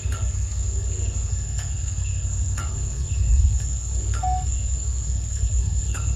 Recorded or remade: remade